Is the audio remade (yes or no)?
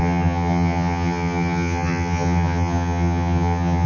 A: yes